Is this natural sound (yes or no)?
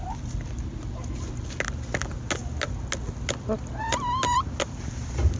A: yes